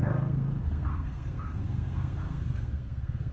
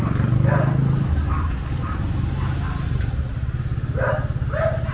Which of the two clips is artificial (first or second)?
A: first